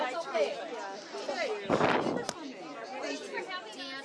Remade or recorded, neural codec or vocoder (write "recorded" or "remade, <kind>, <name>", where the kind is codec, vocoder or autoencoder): recorded